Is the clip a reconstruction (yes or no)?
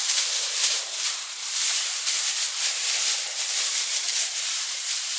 yes